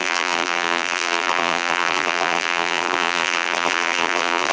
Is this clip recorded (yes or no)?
no